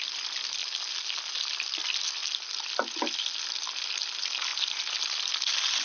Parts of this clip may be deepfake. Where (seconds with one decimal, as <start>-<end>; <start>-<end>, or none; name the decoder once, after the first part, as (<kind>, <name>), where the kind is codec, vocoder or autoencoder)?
none